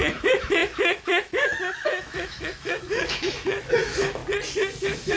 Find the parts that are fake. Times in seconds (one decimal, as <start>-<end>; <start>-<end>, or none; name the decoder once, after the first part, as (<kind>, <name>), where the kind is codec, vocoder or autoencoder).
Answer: 0.0-4.2 (autoencoder, DAC-VAE); 4.8-5.2